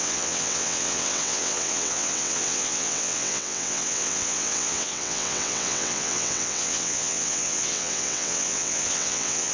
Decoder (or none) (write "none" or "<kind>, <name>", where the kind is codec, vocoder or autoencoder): vocoder, WaveNeXt